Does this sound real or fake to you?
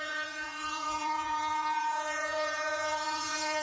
fake